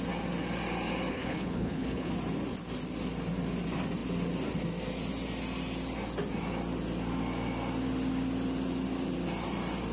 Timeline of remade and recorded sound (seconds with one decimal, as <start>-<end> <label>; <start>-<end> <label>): 0.0-1.1 recorded; 1.1-2.1 remade; 2.1-9.9 recorded